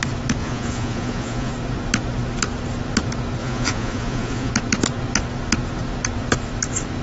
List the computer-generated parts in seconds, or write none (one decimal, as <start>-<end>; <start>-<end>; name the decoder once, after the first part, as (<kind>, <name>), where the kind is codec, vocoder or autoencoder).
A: 0.4-1.5 (vocoder, Vocos); 3.4-4.5